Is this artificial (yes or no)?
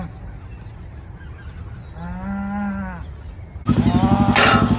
no